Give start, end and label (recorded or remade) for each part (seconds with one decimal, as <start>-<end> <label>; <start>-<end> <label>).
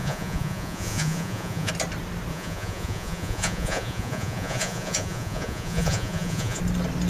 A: 0.0-1.7 remade; 1.7-2.3 recorded; 2.3-6.6 remade; 6.6-7.1 recorded